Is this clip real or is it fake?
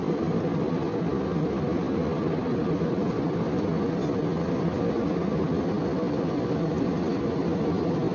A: real